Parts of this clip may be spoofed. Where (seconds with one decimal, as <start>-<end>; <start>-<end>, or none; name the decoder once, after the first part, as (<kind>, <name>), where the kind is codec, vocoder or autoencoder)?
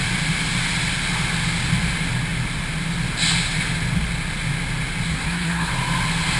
5.1-5.7 (codec, SNAC)